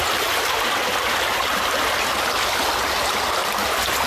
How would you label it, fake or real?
real